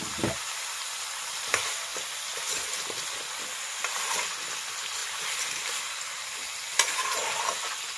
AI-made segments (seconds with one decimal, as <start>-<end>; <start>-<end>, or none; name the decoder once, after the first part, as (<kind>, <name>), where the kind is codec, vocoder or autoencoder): 5.0-6.0 (vocoder, BigVGAN v2)